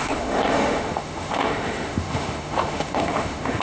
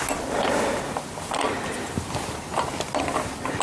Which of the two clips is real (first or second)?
second